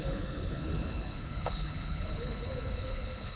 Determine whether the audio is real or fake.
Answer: fake